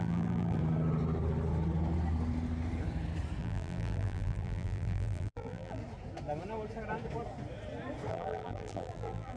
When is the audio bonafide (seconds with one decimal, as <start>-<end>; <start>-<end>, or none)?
0.6-3.4; 5.8-8.1

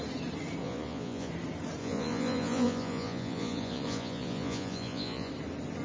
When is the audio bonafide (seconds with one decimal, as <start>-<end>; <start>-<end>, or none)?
0.0-0.6; 1.3-1.8; 5.3-5.8

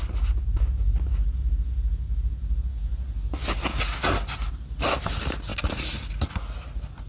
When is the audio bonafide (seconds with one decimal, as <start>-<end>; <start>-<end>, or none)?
0.0-7.1